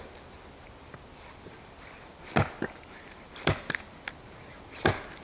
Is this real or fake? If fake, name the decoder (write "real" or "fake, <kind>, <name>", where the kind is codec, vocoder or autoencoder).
real